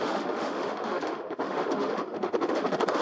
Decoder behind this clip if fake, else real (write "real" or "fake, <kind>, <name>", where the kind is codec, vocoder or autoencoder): fake, autoencoder, DAC-VAE